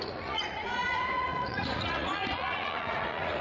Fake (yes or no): yes